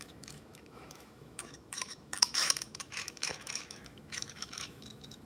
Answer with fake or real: fake